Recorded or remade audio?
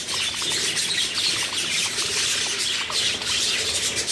remade